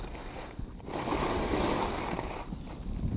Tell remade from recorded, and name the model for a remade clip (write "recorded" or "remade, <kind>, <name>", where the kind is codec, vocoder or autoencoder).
recorded